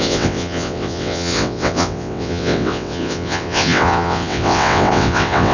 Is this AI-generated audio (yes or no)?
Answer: yes